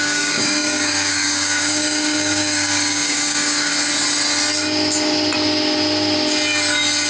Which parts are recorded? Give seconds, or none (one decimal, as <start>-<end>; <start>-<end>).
3.7-7.1